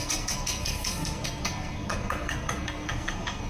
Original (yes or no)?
no